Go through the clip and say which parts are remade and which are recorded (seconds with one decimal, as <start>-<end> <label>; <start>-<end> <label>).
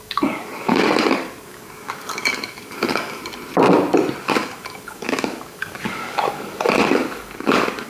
0.0-3.2 remade; 3.2-4.2 recorded; 4.2-7.9 remade